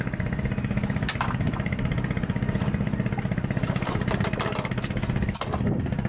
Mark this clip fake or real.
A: real